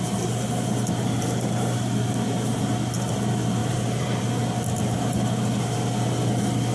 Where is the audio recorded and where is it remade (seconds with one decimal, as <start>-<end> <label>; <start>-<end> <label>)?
0.0-3.6 recorded; 3.6-4.2 remade; 4.2-6.7 recorded